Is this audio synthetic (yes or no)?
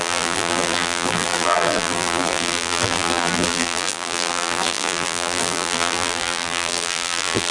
yes